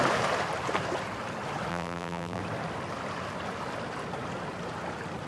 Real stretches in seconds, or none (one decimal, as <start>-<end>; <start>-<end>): 0.0-1.7; 2.4-5.3